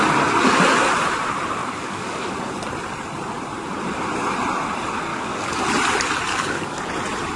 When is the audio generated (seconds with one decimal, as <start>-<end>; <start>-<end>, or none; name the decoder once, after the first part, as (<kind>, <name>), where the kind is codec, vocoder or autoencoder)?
1.6-2.3 (codec, DAC); 5.1-5.6; 6.3-6.8